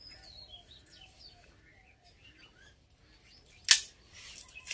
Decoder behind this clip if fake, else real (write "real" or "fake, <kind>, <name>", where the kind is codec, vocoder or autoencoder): real